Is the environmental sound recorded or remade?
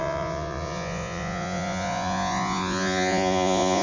remade